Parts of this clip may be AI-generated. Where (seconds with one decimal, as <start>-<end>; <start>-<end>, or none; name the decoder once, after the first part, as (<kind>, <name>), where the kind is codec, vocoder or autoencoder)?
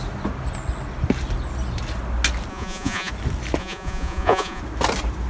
2.5-3.1 (vocoder, Vocos); 3.6-4.6